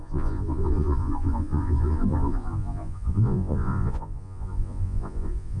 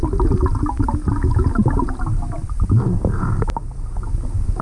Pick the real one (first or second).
second